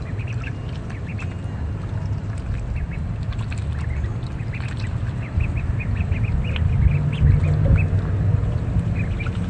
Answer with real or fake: real